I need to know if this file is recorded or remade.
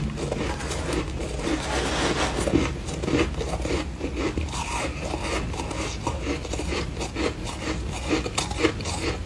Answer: recorded